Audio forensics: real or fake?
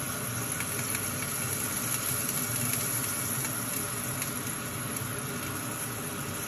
real